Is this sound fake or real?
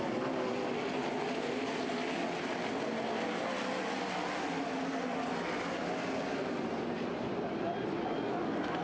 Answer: real